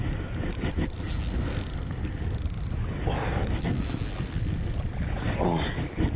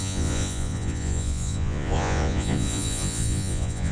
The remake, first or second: second